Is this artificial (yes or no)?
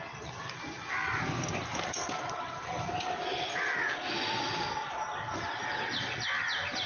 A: no